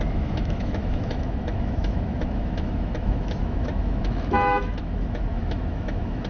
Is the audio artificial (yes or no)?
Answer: yes